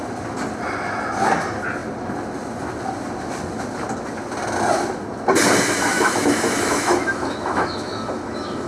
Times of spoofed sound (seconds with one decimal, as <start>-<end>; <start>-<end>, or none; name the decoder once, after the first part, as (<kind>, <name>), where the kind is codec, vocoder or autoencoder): 5.9-8.7 (autoencoder, DAC-VAE)